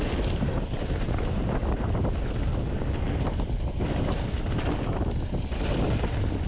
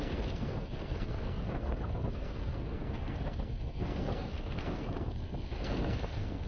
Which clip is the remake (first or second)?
second